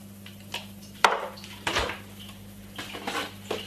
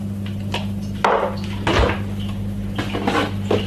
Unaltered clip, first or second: second